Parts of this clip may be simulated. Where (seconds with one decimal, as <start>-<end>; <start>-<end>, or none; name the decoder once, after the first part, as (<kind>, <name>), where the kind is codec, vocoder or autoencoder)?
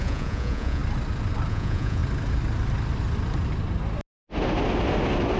0.0-0.8 (vocoder, Vocos); 1.5-2.0